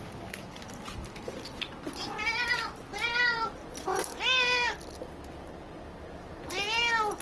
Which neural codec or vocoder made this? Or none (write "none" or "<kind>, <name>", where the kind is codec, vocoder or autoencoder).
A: none